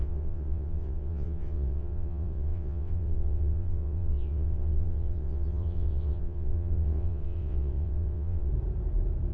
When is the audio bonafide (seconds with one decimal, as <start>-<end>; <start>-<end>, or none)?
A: 8.5-9.3